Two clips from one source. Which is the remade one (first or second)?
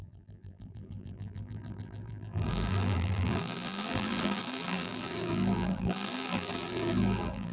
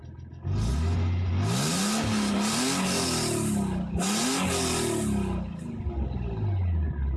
first